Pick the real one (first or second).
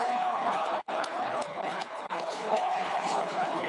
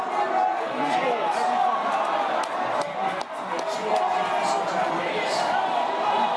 second